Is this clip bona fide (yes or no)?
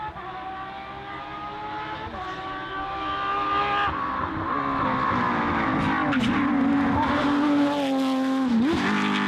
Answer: yes